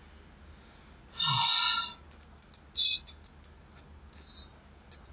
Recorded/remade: recorded